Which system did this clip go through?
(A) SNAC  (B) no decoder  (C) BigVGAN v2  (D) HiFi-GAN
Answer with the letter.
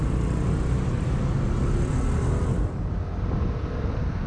B